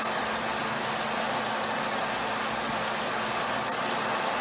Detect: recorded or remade recorded